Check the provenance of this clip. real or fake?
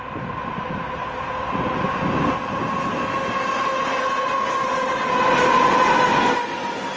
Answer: real